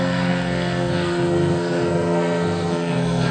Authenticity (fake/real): fake